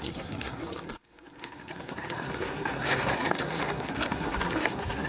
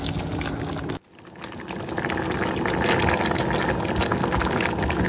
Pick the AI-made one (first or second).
first